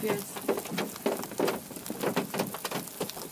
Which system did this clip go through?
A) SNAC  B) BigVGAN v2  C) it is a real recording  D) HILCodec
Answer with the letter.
C